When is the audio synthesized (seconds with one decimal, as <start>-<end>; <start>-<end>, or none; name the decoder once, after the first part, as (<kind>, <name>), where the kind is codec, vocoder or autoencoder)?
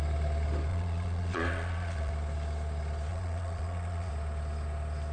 0.7-2.1 (vocoder, Vocos); 3.1-4.1